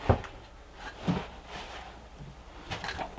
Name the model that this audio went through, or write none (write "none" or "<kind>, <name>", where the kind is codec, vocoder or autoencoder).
none